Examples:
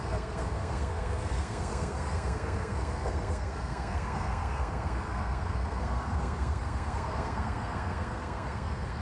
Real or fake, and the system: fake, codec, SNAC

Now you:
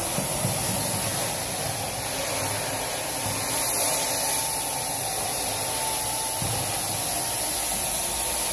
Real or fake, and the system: real